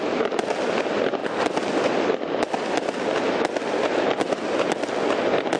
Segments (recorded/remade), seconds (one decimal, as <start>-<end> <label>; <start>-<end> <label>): 0.0-5.6 recorded

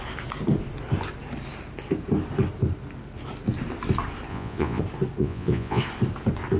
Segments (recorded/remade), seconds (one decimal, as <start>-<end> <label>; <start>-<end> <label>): 0.0-4.3 recorded; 4.3-4.8 remade; 4.8-5.2 recorded; 5.2-5.8 remade; 5.8-6.6 recorded

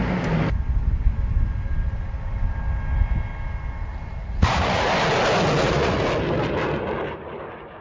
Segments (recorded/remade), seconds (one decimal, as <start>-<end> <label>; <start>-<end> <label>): 0.0-4.2 recorded; 4.2-4.9 remade; 4.9-5.6 recorded; 5.6-6.1 remade; 6.1-7.8 recorded